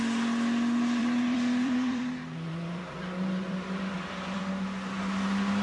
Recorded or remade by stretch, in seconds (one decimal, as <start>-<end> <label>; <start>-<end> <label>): 0.0-1.0 recorded; 1.0-4.4 remade; 4.4-5.6 recorded